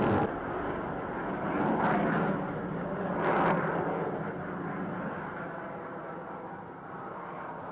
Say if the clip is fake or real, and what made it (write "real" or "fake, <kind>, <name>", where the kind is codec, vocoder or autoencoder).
real